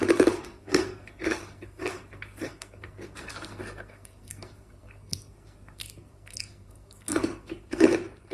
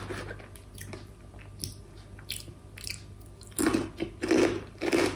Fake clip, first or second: first